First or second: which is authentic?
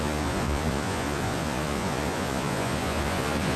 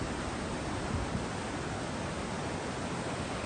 second